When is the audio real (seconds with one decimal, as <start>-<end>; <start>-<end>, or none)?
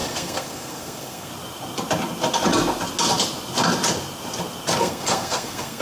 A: 1.3-4.8